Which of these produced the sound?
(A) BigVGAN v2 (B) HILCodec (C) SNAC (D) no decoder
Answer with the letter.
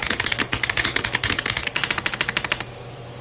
D